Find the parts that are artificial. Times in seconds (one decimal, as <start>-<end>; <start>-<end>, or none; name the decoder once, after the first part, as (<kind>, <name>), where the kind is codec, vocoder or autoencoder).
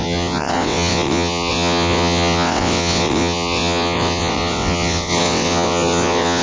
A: 0.0-6.4 (vocoder, WaveNeXt)